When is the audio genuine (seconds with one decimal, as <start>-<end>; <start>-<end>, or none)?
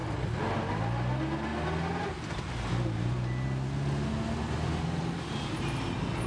0.0-6.3